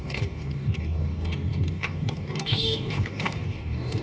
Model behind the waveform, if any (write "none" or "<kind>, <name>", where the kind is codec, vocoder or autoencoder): codec, DAC